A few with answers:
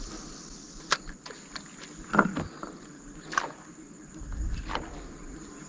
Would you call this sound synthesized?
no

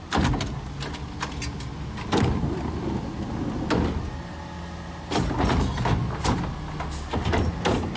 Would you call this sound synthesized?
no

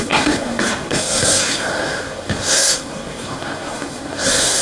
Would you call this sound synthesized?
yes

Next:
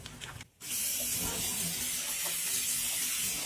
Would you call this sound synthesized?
no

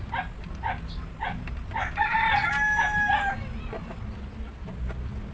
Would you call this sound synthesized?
no